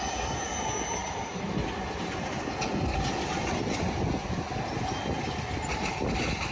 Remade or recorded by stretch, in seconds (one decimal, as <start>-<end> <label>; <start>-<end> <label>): 0.0-6.5 recorded